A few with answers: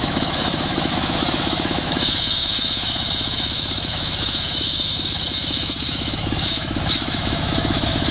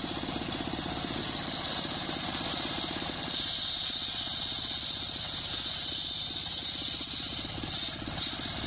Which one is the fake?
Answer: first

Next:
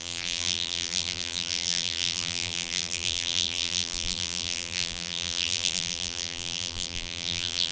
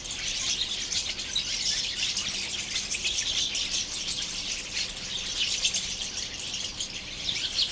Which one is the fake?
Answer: first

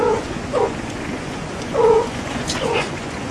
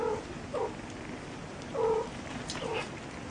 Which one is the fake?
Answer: first